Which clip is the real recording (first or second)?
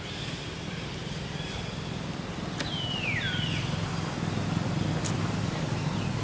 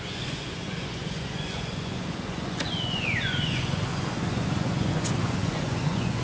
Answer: first